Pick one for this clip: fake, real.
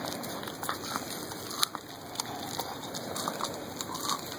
real